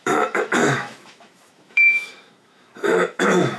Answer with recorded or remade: remade